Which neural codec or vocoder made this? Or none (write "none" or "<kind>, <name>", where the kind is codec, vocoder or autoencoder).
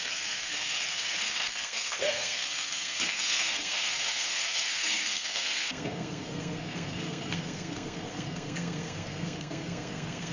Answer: codec, SNAC